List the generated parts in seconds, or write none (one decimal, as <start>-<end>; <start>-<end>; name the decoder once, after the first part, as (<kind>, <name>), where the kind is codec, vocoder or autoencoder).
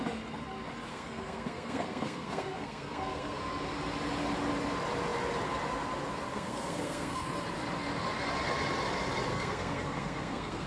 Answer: 0.9-3.4 (codec, SNAC); 6.3-7.3; 9.3-10.7